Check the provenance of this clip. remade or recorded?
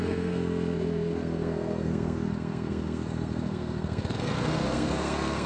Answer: remade